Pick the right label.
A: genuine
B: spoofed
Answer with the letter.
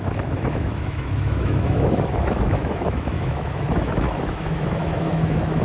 B